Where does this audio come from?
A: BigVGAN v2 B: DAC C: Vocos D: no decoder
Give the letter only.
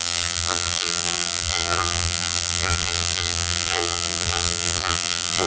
A